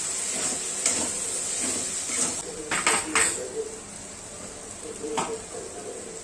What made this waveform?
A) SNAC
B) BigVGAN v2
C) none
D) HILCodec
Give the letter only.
C